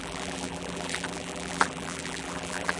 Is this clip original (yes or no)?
no